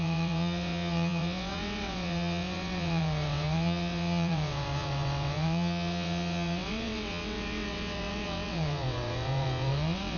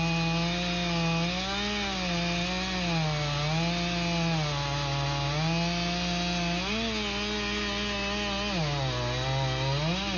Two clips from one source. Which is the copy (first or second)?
first